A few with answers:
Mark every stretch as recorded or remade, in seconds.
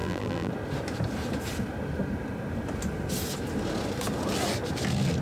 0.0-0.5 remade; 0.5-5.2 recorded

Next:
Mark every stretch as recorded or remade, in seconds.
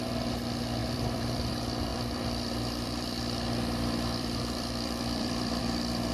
0.0-0.8 recorded; 0.8-1.5 remade; 1.5-1.9 recorded; 1.9-5.6 remade; 5.6-6.1 recorded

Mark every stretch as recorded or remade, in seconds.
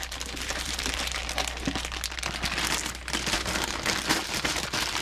0.0-1.2 remade; 1.2-4.2 recorded; 4.2-5.0 remade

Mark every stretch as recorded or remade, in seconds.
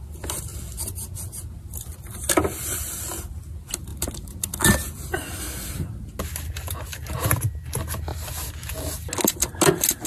0.0-10.1 recorded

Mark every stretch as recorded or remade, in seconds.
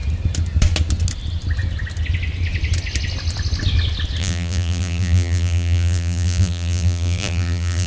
0.0-4.2 recorded; 4.2-7.9 remade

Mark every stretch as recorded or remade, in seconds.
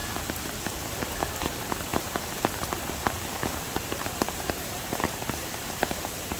0.0-1.4 recorded; 1.4-6.4 remade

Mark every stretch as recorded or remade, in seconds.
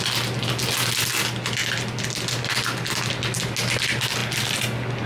0.0-5.1 recorded